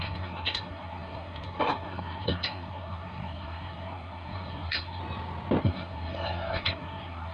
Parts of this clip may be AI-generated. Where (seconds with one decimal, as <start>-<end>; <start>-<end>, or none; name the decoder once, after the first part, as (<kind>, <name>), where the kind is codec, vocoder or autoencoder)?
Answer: 0.0-5.0 (codec, SNAC); 5.6-7.3